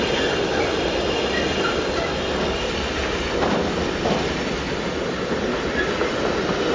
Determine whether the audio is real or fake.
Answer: real